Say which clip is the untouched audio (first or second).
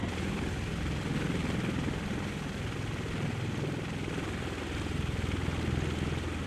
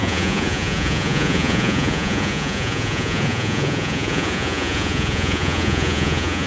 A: first